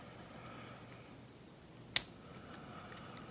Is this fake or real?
real